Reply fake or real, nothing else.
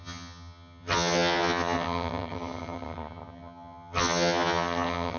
fake